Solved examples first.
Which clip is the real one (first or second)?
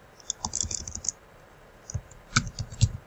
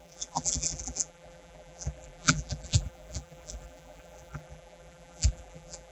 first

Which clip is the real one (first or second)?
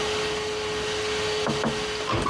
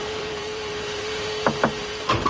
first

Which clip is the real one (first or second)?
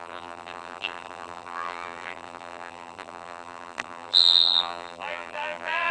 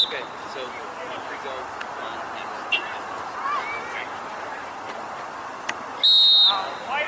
second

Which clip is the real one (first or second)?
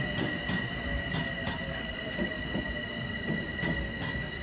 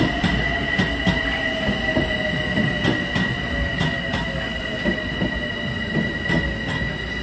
second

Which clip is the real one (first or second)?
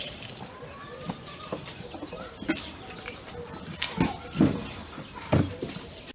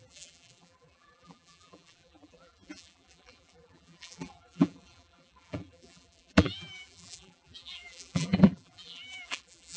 first